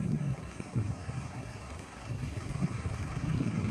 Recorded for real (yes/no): no